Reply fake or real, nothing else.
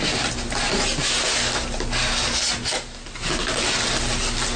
real